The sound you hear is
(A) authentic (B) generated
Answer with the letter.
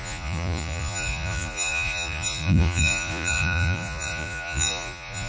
B